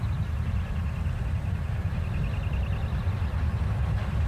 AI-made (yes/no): no